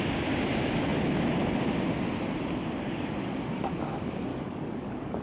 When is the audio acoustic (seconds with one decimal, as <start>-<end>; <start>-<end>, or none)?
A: 0.0-3.2; 3.7-4.3